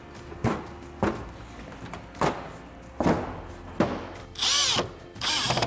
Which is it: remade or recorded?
recorded